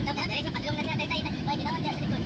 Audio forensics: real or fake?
fake